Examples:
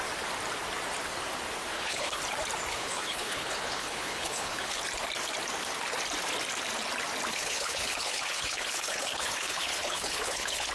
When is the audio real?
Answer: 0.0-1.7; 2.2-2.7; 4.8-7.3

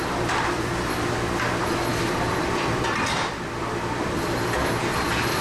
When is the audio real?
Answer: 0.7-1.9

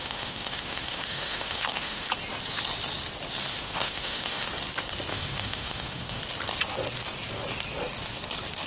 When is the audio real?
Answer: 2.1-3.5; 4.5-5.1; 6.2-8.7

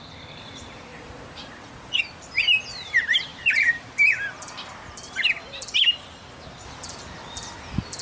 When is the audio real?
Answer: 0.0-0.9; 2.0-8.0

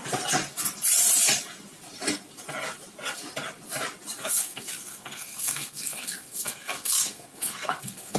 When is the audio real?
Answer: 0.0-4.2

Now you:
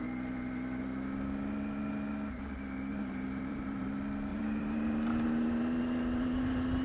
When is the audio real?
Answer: 0.0-2.9; 3.9-4.3; 5.8-6.8